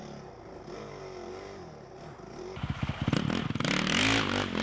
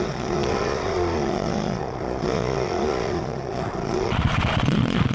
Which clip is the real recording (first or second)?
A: first